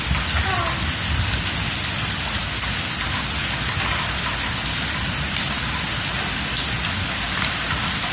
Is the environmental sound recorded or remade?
recorded